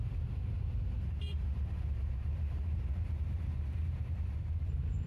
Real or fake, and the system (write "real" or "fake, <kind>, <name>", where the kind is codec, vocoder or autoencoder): fake, vocoder, BigVGAN v2